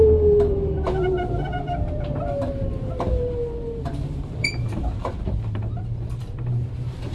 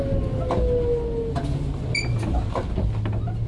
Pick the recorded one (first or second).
second